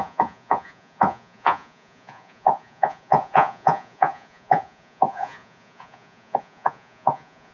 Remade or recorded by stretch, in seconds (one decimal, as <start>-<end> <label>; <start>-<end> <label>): 0.0-7.5 remade